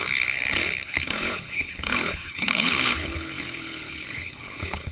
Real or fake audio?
fake